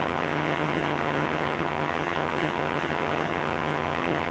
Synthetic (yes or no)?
yes